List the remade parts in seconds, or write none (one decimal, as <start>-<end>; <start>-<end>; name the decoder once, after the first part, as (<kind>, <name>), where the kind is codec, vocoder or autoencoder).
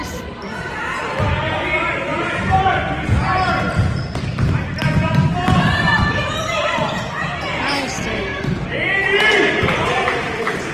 2.1-2.6 (vocoder, BigVGAN v2); 8.3-10.7